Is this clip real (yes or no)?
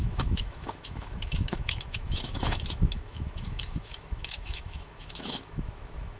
no